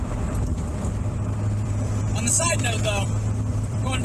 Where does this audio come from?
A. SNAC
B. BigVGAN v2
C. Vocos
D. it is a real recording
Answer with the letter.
B